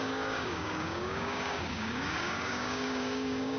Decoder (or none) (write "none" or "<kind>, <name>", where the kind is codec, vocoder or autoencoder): codec, DAC